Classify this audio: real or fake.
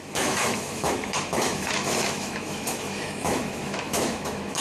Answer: fake